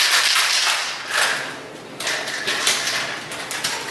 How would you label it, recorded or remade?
recorded